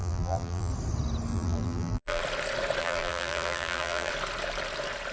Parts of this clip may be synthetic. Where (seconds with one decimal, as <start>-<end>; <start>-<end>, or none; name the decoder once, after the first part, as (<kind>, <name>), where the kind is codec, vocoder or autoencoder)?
0.0-0.7 (vocoder, BigVGAN v2); 1.3-2.2; 2.8-4.1